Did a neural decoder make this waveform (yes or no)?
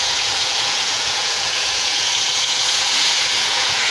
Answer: yes